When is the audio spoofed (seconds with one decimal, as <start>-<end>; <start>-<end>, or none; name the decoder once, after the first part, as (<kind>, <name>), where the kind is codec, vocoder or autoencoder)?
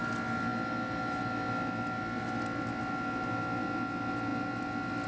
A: none